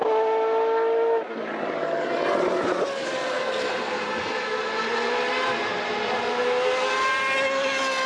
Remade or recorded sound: recorded